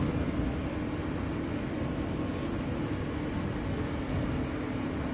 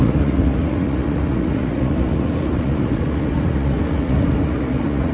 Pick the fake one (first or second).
second